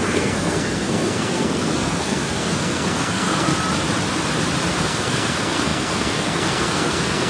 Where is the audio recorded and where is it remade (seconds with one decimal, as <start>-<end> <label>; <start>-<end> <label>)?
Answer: 0.0-3.5 remade; 3.5-4.7 recorded; 4.7-7.3 remade